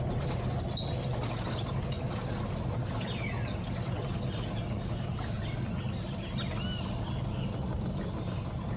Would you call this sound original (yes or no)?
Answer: yes